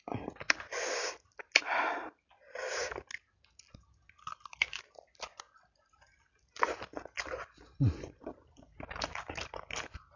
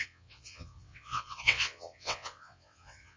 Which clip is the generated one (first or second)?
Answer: second